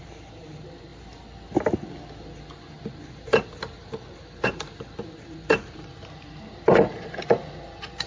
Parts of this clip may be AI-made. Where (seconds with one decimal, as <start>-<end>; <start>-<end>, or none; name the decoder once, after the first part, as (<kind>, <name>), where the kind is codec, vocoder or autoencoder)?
0.0-0.9 (vocoder, BigVGAN v2); 2.9-8.1

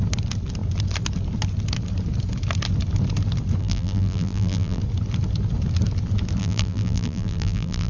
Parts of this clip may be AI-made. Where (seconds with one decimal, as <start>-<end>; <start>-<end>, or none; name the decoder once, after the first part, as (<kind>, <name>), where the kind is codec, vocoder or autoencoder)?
3.6-4.8 (vocoder, BigVGAN v2); 6.4-7.9

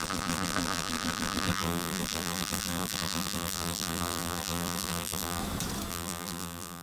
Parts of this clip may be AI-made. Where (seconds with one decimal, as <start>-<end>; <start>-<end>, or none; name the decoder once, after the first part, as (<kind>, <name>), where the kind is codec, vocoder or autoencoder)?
0.0-5.4 (vocoder, BigVGAN v2); 5.9-6.8

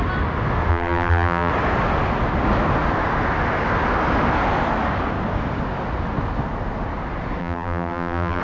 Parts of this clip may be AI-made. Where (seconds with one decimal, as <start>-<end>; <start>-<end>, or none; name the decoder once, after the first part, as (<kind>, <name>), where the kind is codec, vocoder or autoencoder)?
0.7-1.5 (vocoder, BigVGAN v2); 7.4-8.4

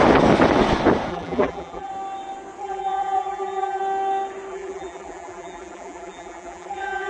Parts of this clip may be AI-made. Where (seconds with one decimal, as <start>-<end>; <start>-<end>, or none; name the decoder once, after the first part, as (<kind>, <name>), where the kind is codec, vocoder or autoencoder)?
1.1-1.9 (vocoder, BigVGAN v2); 2.6-3.8; 4.5-7.1

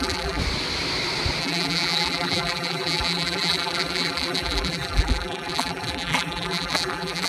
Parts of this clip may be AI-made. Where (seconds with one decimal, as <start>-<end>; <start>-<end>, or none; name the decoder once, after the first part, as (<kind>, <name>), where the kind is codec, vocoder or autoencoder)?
0.0-0.4 (vocoder, BigVGAN v2); 1.4-7.3

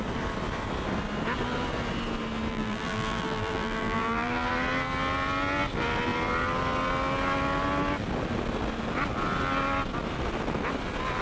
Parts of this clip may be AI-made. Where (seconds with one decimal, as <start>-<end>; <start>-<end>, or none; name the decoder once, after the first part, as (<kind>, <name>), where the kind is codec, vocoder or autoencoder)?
2.5-4.5 (vocoder, BigVGAN v2)